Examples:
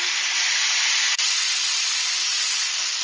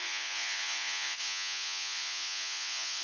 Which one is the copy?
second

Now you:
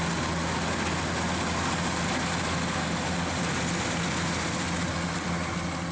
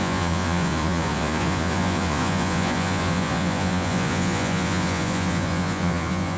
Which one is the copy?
second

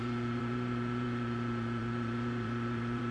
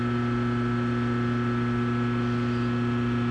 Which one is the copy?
first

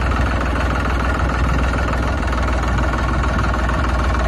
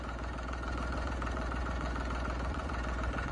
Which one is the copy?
second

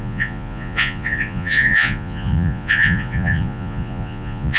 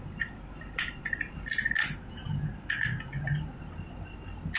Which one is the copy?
first